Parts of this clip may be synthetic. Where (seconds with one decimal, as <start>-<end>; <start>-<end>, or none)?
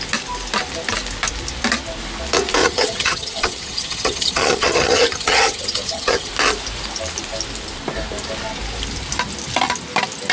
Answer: 2.6-6.3